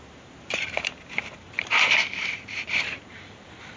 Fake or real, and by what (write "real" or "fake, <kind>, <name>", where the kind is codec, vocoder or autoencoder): fake, vocoder, BigVGAN v2